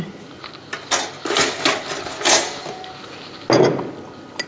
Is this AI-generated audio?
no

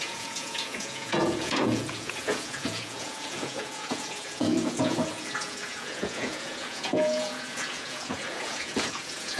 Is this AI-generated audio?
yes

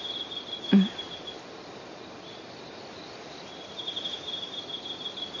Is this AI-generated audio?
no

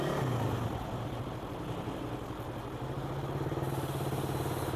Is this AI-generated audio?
no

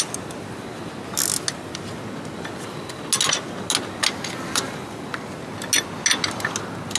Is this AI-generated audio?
no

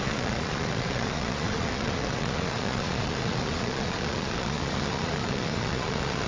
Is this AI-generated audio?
yes